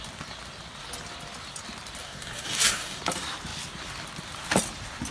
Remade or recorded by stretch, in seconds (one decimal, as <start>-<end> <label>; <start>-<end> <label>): 0.0-2.0 recorded; 2.0-3.0 remade; 3.0-5.1 recorded